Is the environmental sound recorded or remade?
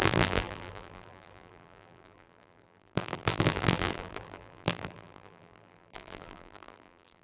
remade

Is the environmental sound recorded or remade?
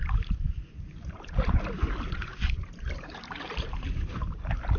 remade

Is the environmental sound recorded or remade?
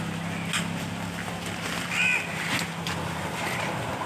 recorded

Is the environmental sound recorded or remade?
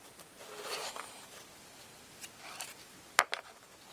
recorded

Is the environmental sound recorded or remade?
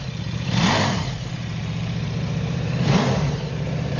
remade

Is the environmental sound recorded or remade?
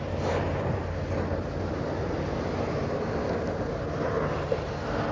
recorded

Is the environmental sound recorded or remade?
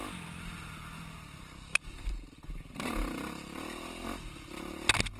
recorded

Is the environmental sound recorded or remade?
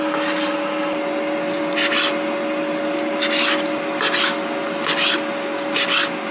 recorded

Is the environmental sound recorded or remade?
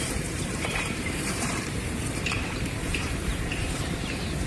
remade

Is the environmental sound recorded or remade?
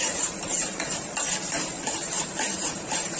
remade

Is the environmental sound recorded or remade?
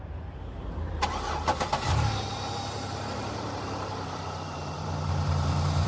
remade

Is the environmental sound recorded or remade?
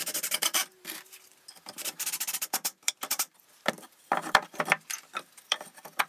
remade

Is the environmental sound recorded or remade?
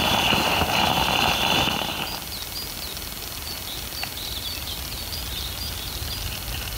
recorded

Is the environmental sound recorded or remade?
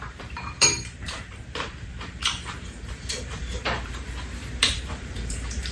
remade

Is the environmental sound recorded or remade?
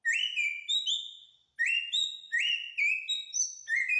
recorded